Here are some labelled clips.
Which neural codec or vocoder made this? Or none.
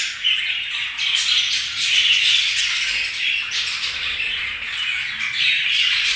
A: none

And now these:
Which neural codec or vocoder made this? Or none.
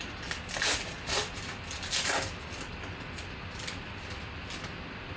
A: none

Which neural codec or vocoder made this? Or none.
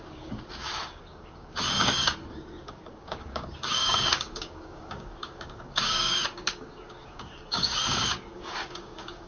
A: codec, DAC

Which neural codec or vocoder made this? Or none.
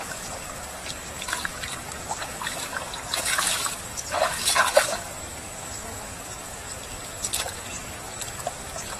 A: codec, DAC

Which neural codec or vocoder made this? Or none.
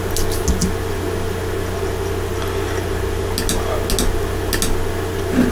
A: none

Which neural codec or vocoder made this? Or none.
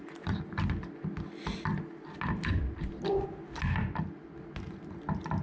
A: none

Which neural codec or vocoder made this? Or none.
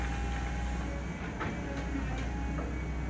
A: none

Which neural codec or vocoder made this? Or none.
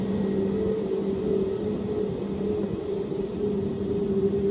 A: none